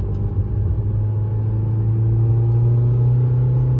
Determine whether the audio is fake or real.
real